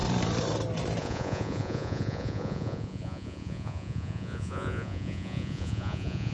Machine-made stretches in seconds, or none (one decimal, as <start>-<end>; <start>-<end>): 1.0-6.3